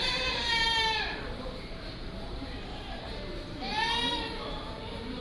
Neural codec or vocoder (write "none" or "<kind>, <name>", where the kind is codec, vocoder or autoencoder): vocoder, BigVGAN v2